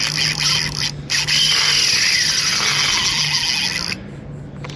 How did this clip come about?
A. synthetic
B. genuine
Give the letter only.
B